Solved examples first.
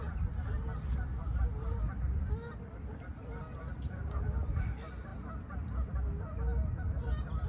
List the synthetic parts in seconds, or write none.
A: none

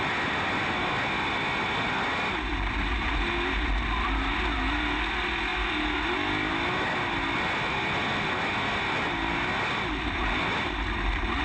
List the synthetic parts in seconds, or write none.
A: none

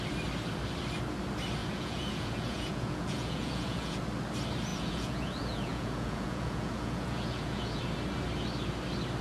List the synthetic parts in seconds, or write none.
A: 1.6-4.0 (vocoder, Vocos); 4.7-7.8

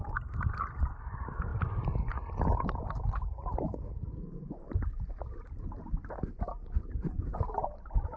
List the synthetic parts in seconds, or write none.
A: none